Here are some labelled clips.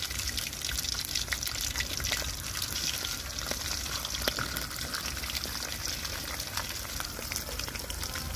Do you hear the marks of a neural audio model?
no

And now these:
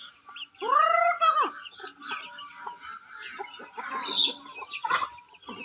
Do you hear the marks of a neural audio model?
no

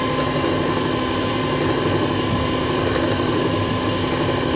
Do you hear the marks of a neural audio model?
no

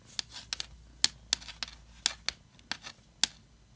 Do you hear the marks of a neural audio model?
no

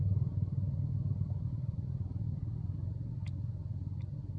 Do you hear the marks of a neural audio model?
no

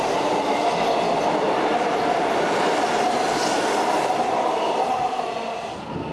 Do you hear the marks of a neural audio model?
no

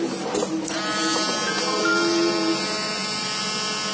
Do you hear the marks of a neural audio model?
no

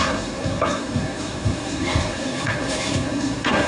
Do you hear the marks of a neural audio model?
yes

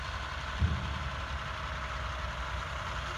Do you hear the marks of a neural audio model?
no